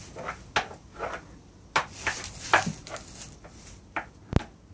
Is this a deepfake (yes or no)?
no